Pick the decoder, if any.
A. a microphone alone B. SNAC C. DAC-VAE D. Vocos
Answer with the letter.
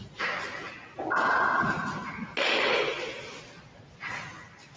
A